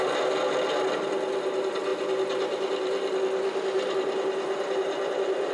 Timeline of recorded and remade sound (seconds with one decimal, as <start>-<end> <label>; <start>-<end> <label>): 0.0-5.5 recorded